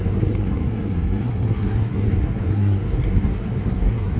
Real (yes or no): no